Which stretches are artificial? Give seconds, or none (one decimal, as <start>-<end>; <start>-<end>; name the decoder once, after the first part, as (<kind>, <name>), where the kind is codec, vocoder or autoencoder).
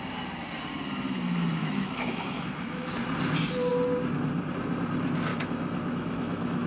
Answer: 1.6-2.9 (autoencoder, DAC-VAE); 5.3-6.7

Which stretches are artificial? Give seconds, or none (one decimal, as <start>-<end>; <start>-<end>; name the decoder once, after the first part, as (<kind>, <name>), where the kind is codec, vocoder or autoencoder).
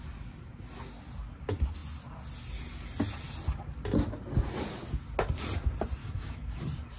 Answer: 6.0-6.6 (autoencoder, DAC-VAE)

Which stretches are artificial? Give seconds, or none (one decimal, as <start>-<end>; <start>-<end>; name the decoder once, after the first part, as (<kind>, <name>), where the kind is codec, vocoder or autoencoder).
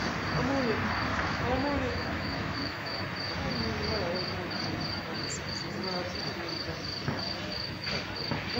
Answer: 1.1-3.0 (autoencoder, DAC-VAE)